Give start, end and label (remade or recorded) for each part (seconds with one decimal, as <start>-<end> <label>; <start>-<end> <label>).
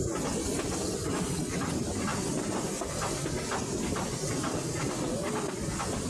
0.0-6.1 recorded